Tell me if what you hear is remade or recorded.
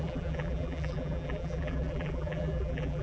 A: remade